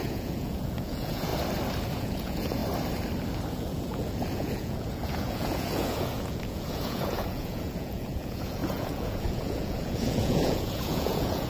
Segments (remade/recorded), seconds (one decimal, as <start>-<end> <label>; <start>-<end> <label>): 0.0-1.3 remade; 1.3-2.0 recorded; 2.0-2.6 remade; 2.6-3.5 recorded; 3.5-11.5 remade